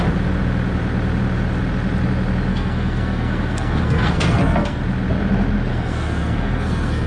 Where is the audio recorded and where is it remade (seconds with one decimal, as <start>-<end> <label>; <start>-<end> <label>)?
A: 0.0-2.5 recorded; 2.5-4.8 remade; 4.8-5.7 recorded; 5.7-7.1 remade